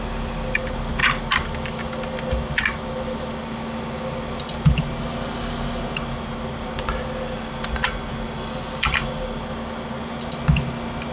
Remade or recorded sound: recorded